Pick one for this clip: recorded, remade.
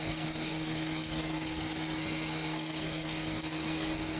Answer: remade